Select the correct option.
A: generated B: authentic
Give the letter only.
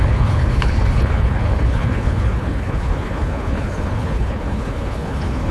A